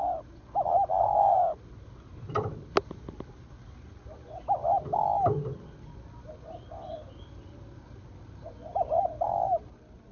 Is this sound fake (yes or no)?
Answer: no